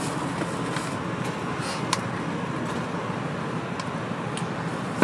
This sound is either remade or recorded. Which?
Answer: recorded